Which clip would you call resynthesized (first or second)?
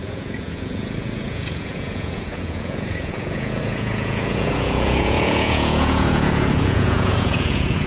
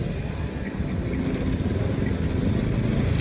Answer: first